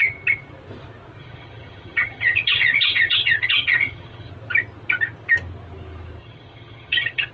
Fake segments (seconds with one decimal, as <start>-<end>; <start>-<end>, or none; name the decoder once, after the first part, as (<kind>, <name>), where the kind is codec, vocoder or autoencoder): 1.2-4.3 (vocoder, HiFi-GAN); 6.2-7.3